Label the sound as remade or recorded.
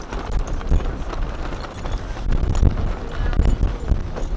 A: recorded